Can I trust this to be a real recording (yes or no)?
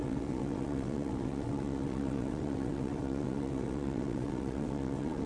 no